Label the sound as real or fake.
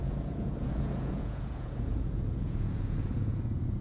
fake